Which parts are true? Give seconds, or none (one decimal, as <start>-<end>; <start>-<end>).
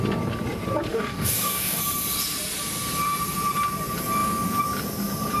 0.0-0.9; 1.8-5.4